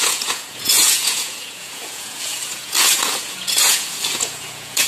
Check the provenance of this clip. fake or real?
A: fake